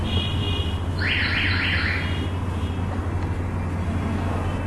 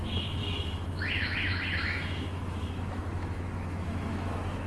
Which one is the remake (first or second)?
second